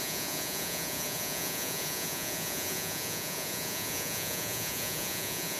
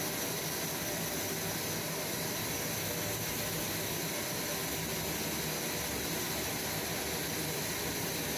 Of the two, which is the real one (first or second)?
second